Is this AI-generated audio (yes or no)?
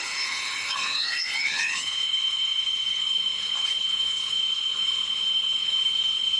yes